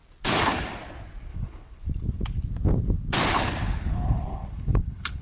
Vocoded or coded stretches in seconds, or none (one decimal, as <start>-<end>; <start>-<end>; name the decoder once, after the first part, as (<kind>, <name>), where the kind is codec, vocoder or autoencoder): 1.3-1.9 (codec, HILCodec); 3.6-5.2